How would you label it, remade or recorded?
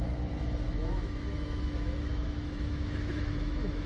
remade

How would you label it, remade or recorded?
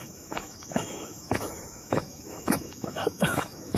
remade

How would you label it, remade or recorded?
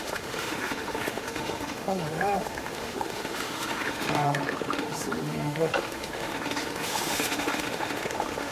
remade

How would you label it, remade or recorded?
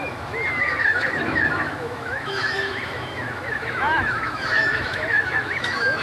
remade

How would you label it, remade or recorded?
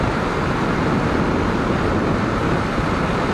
recorded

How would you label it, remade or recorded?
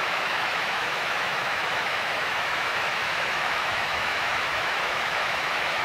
remade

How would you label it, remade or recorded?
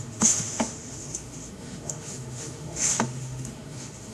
remade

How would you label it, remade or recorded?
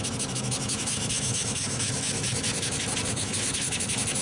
remade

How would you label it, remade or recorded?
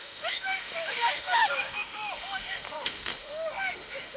remade